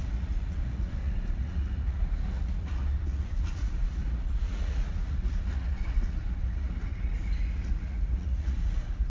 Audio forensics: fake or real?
fake